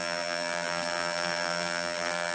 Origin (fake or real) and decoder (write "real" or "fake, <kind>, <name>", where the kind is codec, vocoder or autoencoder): fake, vocoder, BigVGAN v2